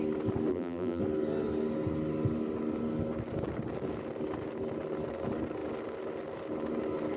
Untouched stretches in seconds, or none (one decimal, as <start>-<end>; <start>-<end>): 0.0-0.5; 1.0-7.2